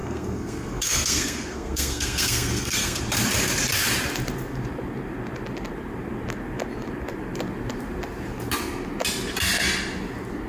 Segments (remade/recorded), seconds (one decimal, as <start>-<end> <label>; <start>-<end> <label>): 0.0-3.0 remade; 3.0-10.5 recorded